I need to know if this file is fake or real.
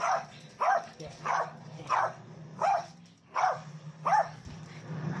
fake